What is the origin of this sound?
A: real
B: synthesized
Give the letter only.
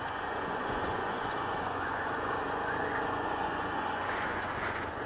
B